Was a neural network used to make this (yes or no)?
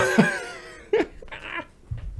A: no